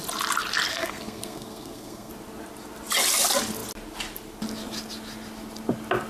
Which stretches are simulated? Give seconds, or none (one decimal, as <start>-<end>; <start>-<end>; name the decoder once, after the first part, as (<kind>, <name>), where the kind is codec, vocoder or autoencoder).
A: 0.7-2.1 (codec, SNAC)